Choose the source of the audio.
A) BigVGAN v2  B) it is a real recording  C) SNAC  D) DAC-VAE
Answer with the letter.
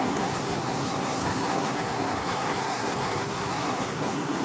C